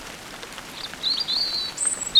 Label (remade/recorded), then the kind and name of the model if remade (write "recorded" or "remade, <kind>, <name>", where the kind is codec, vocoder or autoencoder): recorded